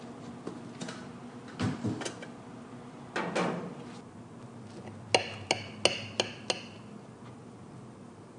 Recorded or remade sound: recorded